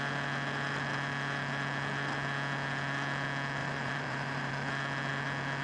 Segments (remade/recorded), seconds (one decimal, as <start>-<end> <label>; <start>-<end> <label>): 0.0-3.6 recorded; 3.6-4.5 remade; 4.5-5.6 recorded